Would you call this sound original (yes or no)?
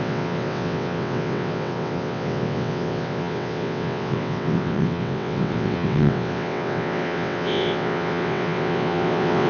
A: no